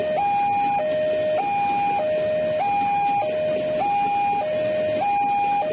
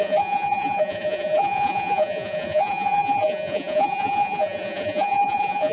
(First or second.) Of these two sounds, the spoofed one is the second